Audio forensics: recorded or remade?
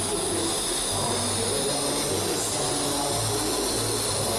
recorded